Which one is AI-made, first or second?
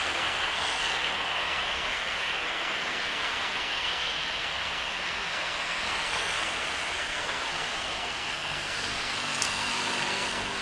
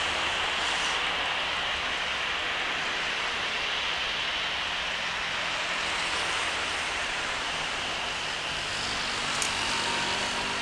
first